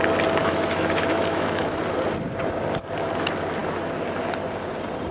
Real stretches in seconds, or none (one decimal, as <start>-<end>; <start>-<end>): 0.0-0.4; 1.8-5.1